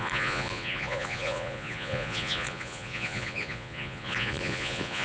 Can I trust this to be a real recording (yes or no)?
no